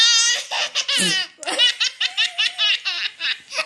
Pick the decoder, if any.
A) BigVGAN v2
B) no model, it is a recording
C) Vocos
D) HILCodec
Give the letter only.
B